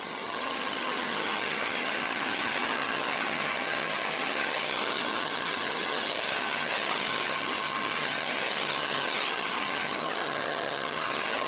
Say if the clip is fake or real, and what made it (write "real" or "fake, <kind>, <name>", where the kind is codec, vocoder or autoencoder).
fake, vocoder, HiFi-GAN